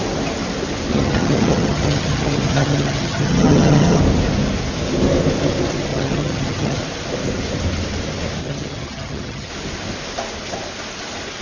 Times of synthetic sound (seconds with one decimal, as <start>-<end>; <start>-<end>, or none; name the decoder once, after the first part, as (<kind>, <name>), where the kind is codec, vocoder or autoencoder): 0.9-4.0 (vocoder, HiFi-GAN); 5.9-6.8; 8.4-9.5